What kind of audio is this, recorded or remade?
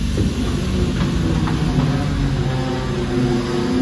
recorded